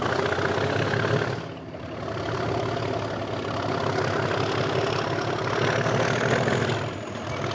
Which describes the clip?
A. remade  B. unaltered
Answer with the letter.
B